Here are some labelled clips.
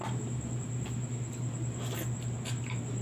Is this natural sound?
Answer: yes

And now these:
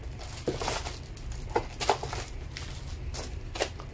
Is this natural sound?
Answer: yes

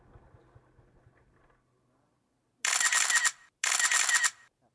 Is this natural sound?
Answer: yes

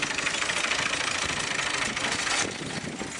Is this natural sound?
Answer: yes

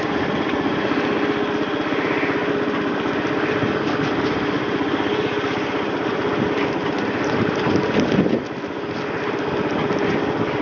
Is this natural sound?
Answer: yes